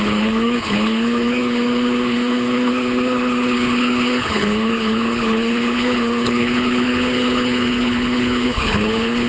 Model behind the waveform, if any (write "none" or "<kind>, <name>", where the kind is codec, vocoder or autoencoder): codec, HILCodec